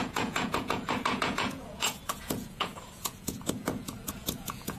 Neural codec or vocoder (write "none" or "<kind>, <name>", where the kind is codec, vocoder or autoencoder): vocoder, Vocos